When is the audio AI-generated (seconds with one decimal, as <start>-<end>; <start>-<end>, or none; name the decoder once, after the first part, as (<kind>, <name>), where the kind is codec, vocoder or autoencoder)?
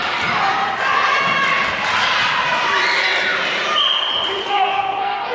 4.4-5.3 (codec, SNAC)